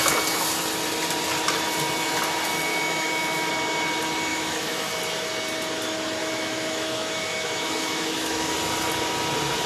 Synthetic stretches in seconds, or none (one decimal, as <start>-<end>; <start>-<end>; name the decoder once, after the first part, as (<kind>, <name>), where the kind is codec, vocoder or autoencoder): 2.7-3.5 (autoencoder, DAC-VAE); 4.3-4.9; 6.2-8.5